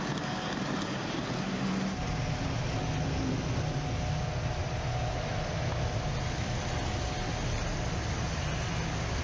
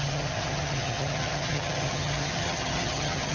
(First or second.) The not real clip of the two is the second